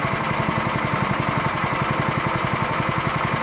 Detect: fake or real real